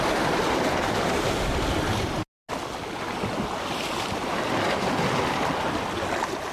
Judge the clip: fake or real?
real